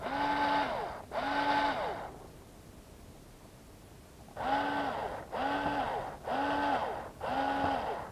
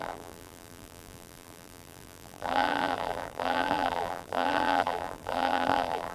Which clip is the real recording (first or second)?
first